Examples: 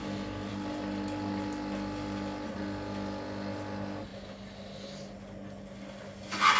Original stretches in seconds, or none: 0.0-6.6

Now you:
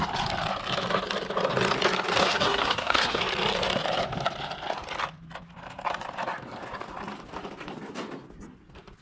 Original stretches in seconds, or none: 0.0-2.2; 3.2-9.0

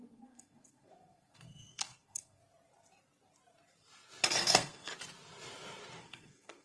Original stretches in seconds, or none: 2.4-4.3; 4.9-6.0

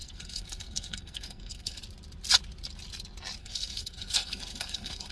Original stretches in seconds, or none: 1.8-3.4

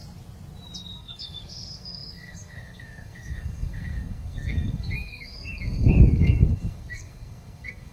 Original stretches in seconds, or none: 0.0-0.8

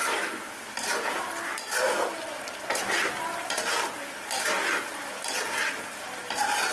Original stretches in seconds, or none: 0.0-6.7

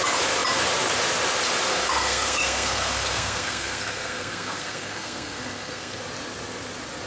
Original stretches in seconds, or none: 0.0-1.7; 6.0-7.1

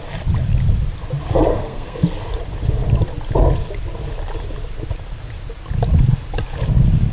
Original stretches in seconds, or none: 0.0-1.5; 2.0-7.1